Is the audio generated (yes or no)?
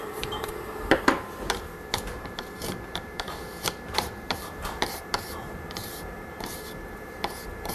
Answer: yes